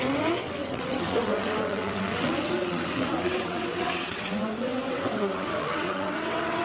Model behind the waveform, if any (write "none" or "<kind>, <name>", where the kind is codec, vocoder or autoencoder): vocoder, WaveNeXt